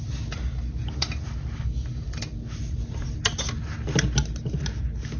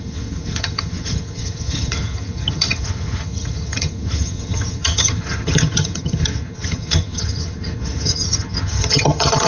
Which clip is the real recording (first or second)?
first